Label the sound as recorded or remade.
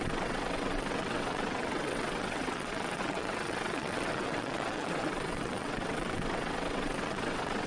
remade